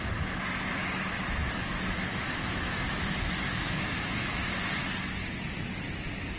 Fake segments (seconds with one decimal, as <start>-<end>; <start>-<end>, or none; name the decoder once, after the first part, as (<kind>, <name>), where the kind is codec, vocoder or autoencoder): 0.8-4.6 (autoencoder, DAC-VAE)